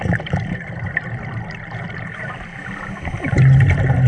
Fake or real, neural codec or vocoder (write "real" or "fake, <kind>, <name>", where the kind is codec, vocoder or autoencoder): real